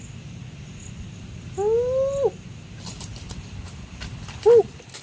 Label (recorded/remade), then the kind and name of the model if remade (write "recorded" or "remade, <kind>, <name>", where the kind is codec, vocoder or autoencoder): recorded